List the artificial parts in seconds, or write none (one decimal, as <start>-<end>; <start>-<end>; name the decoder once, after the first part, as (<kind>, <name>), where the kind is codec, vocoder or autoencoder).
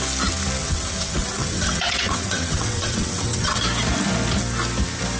0.6-3.6 (vocoder, WaveNeXt)